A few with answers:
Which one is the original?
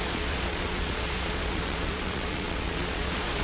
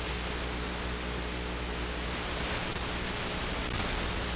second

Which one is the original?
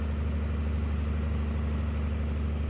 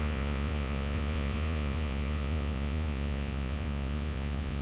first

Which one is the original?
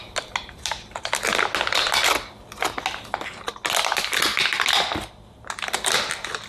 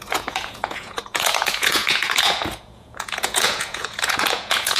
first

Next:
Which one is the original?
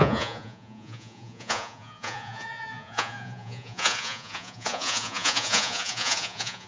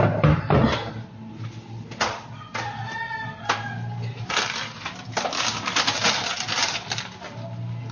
second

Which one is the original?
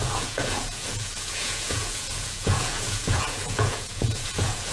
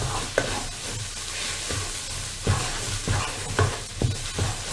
second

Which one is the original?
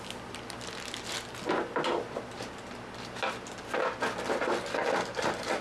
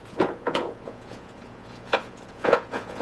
first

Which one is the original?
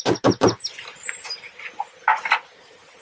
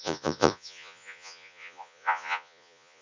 first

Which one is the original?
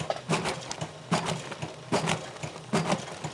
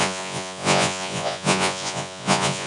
first